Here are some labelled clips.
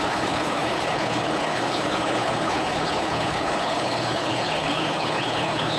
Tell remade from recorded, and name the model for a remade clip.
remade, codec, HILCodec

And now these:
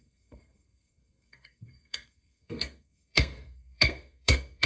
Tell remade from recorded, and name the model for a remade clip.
remade, codec, SNAC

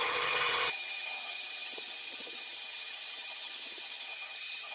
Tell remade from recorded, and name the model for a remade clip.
remade, vocoder, HiFi-GAN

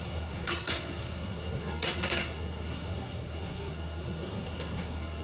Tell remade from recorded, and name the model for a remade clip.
remade, codec, SNAC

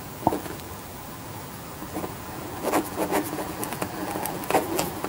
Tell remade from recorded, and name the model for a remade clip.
remade, vocoder, BigVGAN v2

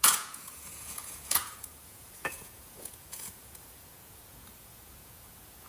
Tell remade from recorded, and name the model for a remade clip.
remade, vocoder, Vocos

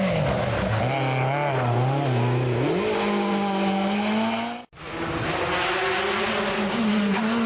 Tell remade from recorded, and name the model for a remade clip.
recorded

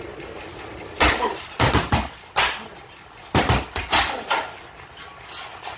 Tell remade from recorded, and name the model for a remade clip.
recorded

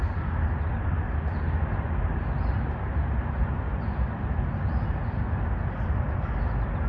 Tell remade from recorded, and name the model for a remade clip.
recorded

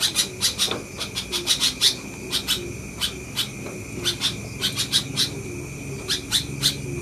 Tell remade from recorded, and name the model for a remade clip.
recorded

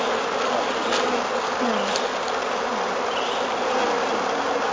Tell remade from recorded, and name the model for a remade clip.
recorded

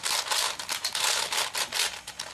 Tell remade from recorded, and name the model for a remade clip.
recorded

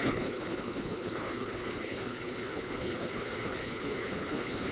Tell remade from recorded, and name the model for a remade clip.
remade, codec, HILCodec